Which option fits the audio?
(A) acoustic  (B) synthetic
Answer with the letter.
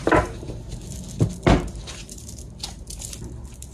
A